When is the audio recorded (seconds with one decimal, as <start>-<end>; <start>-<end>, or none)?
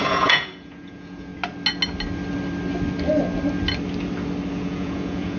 1.3-4.5